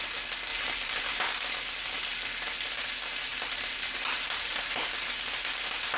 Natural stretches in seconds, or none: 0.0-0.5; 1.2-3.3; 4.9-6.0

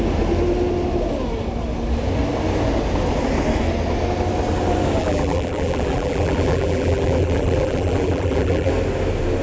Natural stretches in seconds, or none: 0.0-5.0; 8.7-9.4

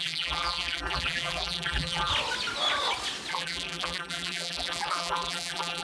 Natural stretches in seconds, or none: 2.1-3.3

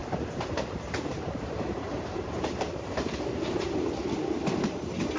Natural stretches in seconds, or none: 3.1-5.2

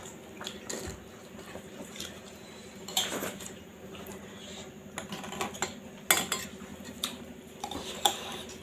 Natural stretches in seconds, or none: 0.0-1.2; 4.1-6.7

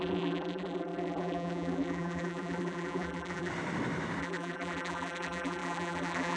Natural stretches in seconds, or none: 3.5-4.2

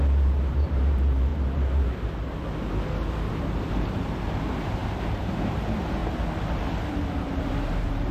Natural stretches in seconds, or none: 1.3-3.7; 6.0-7.2